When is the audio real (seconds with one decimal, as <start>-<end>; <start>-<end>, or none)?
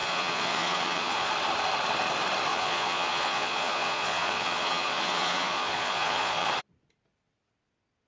1.3-2.5; 6.5-8.1